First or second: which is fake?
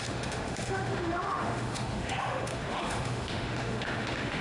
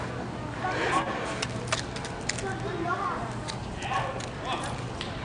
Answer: first